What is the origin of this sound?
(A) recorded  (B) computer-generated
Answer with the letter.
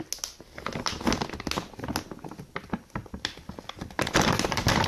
A